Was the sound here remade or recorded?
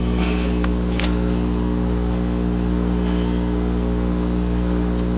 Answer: remade